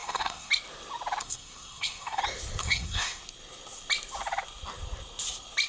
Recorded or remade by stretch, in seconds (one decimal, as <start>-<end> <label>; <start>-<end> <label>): 0.0-0.5 remade; 0.5-1.2 recorded; 1.2-2.2 remade; 2.2-2.6 recorded; 2.6-3.2 remade; 3.2-5.7 recorded